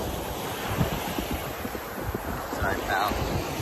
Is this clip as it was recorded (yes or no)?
yes